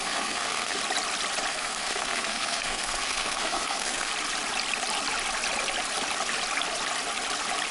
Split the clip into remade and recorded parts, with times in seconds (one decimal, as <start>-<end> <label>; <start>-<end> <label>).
0.0-0.8 remade; 0.8-1.5 recorded; 1.5-4.1 remade; 4.1-7.7 recorded